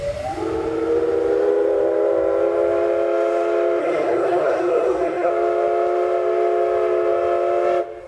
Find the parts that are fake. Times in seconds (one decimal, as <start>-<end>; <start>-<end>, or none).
3.8-5.3